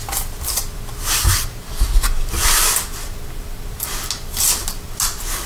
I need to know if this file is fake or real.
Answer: real